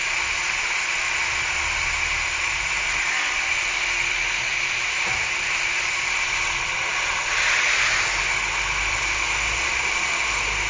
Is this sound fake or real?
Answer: real